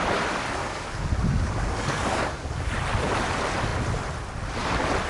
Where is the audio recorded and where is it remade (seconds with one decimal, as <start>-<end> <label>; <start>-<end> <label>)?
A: 0.0-0.6 recorded; 0.6-2.7 remade; 2.7-5.1 recorded